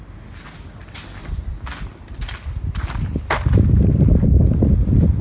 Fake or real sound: real